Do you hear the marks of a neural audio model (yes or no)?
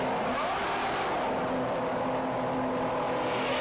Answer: no